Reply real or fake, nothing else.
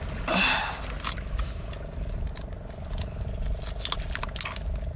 real